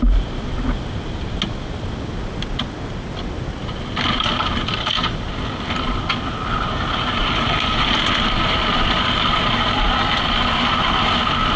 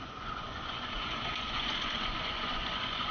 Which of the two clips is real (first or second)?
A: first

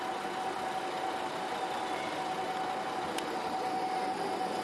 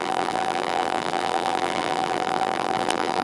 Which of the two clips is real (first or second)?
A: first